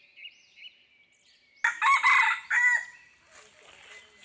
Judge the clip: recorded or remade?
recorded